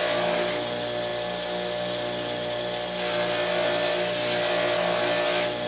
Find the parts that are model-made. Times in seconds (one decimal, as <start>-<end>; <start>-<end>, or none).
none